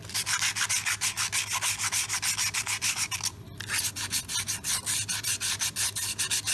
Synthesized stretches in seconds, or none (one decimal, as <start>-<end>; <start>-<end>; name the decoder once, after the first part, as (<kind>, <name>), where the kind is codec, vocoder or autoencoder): none

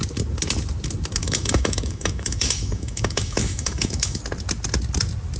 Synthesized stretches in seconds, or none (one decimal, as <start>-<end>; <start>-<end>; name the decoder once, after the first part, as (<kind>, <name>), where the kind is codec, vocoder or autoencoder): 1.2-4.2 (autoencoder, DAC-VAE)

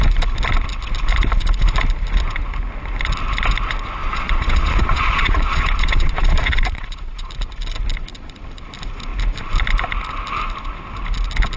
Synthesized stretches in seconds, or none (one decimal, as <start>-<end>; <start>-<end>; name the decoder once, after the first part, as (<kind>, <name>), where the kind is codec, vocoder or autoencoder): 4.0-7.3 (vocoder, Vocos)